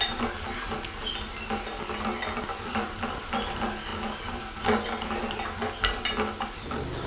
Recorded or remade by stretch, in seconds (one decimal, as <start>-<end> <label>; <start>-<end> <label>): 0.0-7.1 recorded